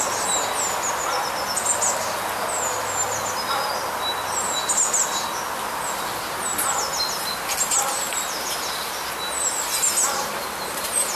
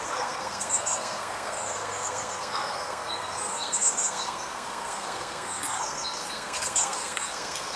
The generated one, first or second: second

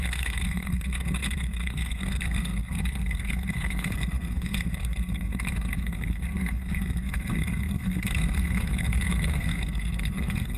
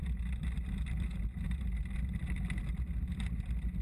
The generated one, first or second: first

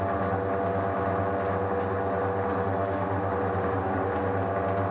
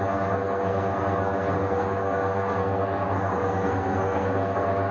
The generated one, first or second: second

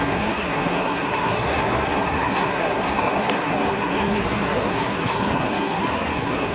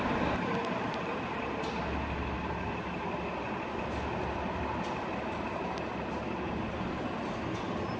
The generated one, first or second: first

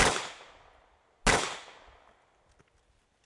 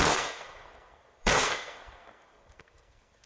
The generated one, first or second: second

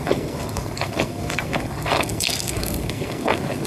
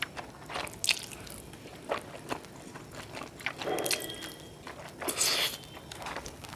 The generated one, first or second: first